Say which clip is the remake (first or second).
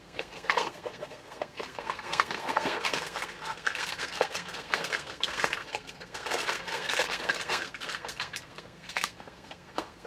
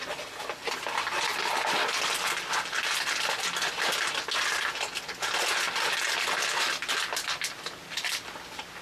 first